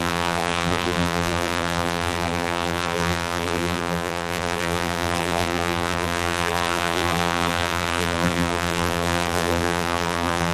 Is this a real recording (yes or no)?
no